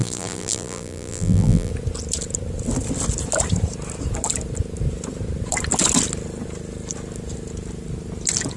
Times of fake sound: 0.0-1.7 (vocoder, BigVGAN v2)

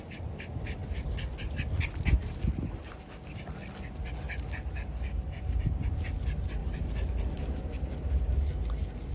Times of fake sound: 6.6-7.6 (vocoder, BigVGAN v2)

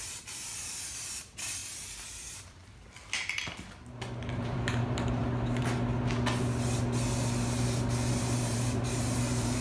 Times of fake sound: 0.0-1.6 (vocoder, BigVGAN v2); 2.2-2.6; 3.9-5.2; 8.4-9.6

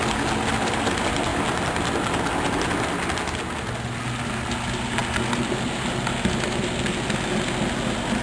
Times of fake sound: none